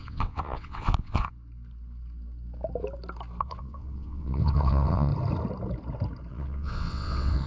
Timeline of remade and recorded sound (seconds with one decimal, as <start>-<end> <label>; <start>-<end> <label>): 0.0-1.3 remade; 1.3-3.4 recorded; 3.4-5.1 remade; 5.1-6.3 recorded; 6.3-7.5 remade